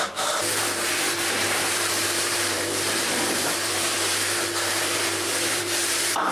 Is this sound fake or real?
fake